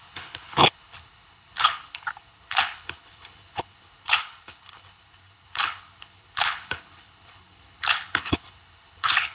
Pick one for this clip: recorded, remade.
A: remade